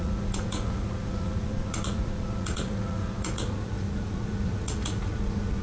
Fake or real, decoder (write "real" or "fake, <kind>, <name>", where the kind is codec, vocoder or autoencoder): fake, vocoder, Vocos